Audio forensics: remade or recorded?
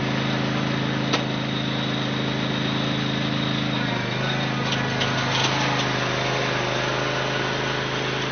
recorded